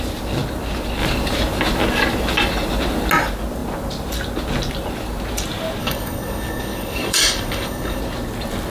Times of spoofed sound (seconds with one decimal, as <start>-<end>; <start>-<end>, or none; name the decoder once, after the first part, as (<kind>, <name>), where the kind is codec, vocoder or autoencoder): 5.8-8.0 (codec, DAC)